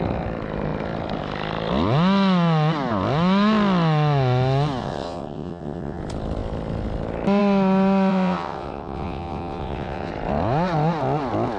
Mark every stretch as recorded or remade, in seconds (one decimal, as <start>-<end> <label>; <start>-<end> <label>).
0.0-4.8 recorded; 4.8-6.0 remade; 6.0-8.1 recorded; 8.1-10.1 remade; 10.1-11.6 recorded